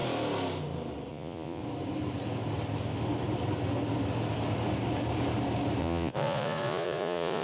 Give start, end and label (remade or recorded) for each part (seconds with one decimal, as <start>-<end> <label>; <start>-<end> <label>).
0.0-1.1 recorded; 1.1-1.6 remade; 1.6-5.8 recorded; 5.8-7.4 remade